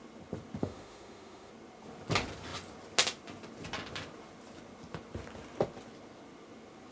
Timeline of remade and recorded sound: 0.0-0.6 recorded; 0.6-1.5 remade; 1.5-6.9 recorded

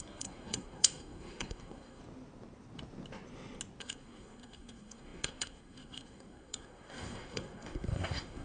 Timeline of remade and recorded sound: 0.0-2.0 remade; 2.0-3.8 recorded; 3.8-8.4 remade

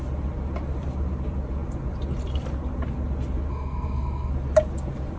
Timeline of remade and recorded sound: 0.0-3.5 recorded; 3.5-4.3 remade; 4.3-5.2 recorded

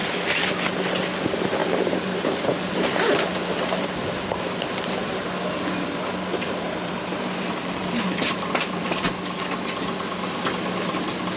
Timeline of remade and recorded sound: 0.0-0.6 remade; 0.6-1.6 recorded; 1.6-5.2 remade; 5.2-6.3 recorded; 6.3-9.1 remade; 9.1-11.4 recorded

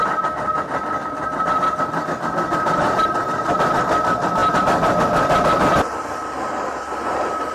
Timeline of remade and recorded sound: 0.0-7.5 recorded